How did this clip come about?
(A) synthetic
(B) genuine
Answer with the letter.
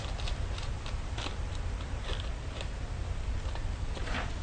B